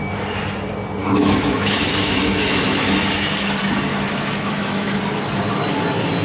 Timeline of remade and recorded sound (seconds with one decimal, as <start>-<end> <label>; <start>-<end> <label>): 0.0-1.0 recorded; 1.0-2.9 remade; 2.9-3.9 recorded; 3.9-5.0 remade; 5.0-6.2 recorded